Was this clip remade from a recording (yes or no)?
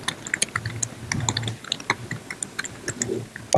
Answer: no